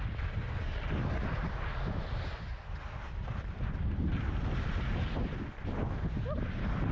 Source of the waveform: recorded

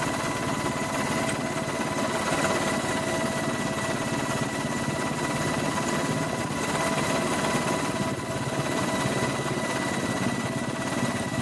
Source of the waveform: recorded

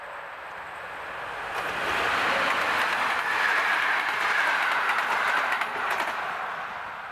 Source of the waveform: recorded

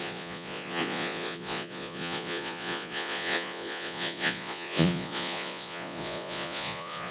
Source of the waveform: remade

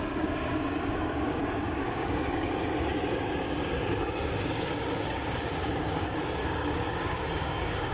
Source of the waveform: remade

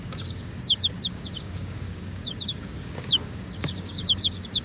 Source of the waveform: remade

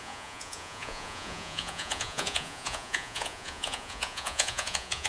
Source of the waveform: remade